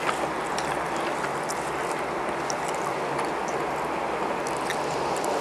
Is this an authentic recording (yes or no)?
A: yes